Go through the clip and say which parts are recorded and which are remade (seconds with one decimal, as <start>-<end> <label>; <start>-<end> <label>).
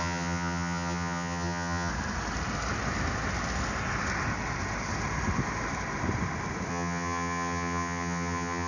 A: 0.0-1.9 remade; 1.9-6.7 recorded; 6.7-8.7 remade